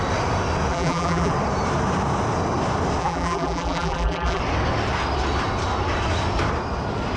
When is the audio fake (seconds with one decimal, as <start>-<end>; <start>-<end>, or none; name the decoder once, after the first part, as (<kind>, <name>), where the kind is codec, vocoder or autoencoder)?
0.7-1.3 (vocoder, BigVGAN v2); 3.0-4.4